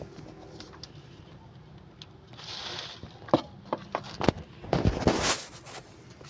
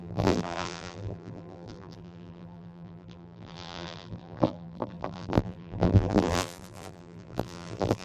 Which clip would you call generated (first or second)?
second